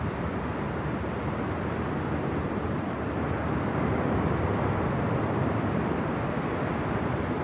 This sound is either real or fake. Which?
real